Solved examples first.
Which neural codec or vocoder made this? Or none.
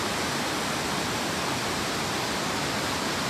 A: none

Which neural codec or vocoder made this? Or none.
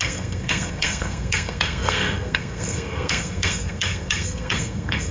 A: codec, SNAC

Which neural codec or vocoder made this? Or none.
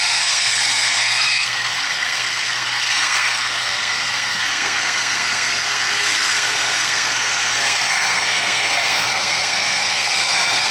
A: codec, SNAC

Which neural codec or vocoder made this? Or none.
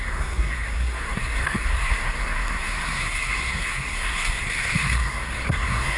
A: codec, SNAC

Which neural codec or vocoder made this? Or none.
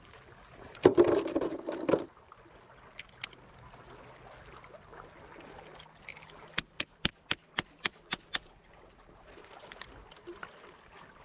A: none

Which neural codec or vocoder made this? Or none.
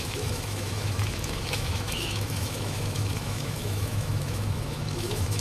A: autoencoder, DAC-VAE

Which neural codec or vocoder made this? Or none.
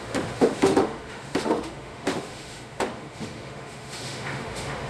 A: autoencoder, DAC-VAE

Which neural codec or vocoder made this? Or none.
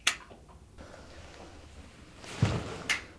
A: none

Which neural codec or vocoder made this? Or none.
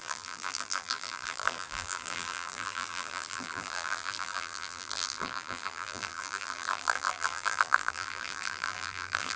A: vocoder, BigVGAN v2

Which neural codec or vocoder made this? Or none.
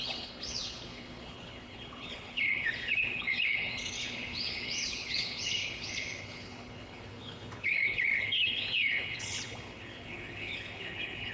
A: codec, HILCodec